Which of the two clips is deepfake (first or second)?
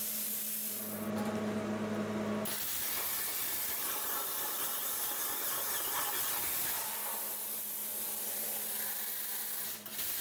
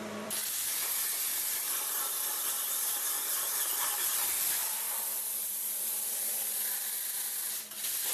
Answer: second